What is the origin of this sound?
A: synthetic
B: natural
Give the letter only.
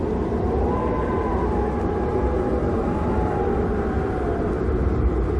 B